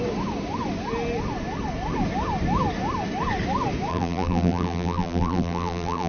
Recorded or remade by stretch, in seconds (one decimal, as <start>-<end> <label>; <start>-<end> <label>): 0.0-3.9 recorded; 3.9-6.1 remade